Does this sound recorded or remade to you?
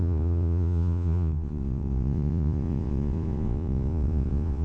remade